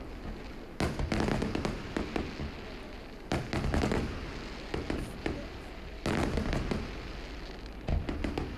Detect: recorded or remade recorded